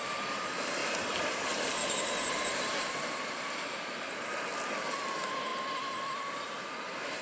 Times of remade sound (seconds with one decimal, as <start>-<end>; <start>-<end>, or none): 0.0-4.5; 5.1-7.2